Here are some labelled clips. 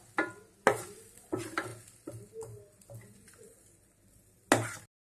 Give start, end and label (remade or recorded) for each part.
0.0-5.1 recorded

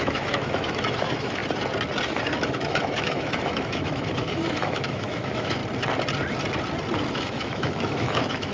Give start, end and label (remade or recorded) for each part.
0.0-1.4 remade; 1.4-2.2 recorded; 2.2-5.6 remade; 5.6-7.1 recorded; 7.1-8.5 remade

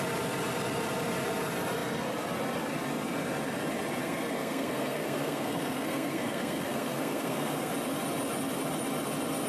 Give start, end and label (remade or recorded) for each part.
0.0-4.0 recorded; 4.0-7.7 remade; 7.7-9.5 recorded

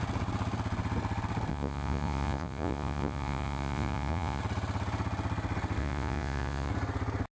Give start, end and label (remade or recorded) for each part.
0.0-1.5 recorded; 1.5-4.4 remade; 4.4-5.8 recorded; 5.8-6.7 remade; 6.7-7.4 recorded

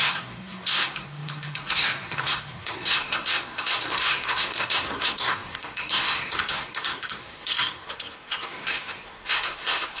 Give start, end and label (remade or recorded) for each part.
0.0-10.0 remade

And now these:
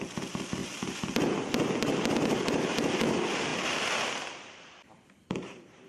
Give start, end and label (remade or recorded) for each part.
0.0-0.6 recorded; 0.6-1.5 remade; 1.5-3.5 recorded; 3.5-5.9 remade

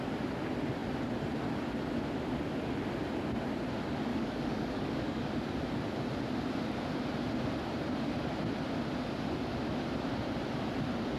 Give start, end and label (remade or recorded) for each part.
0.0-4.1 recorded; 4.1-5.3 remade; 5.3-11.2 recorded